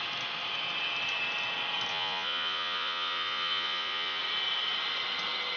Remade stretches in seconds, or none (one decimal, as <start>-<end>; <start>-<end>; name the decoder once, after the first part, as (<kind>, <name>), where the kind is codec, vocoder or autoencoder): 1.9-4.2 (vocoder, Vocos)